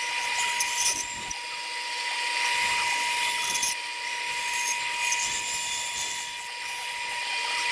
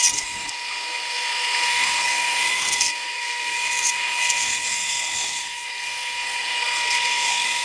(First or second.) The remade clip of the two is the second